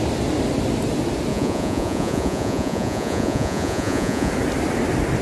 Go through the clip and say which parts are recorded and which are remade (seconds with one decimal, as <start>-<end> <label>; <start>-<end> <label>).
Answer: 0.0-1.3 recorded; 1.3-4.3 remade; 4.3-5.2 recorded